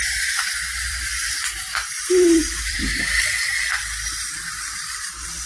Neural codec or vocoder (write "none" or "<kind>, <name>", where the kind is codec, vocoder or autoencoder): vocoder, BigVGAN v2